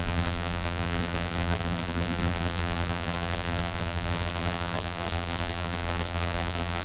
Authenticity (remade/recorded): remade